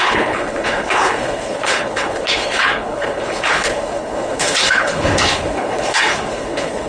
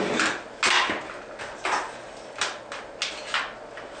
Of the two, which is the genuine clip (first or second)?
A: second